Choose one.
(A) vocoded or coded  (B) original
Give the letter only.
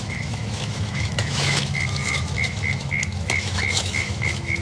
A